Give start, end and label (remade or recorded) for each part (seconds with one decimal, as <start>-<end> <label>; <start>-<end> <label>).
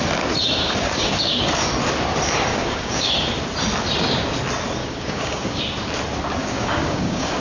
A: 0.0-0.6 recorded; 0.6-1.5 remade; 1.5-2.5 recorded; 2.5-3.1 remade; 3.1-4.8 recorded; 4.8-5.6 remade; 5.6-6.4 recorded; 6.4-7.4 remade